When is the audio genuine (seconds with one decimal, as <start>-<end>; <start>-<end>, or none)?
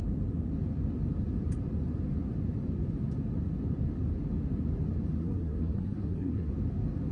0.0-5.2; 6.5-7.1